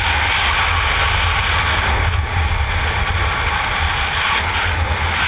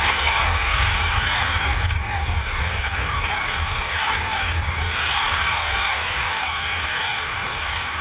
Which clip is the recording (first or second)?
first